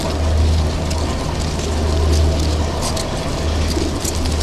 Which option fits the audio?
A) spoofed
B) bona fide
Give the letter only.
B